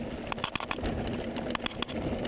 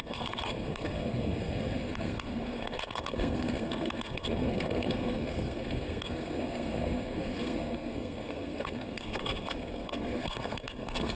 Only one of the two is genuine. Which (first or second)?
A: first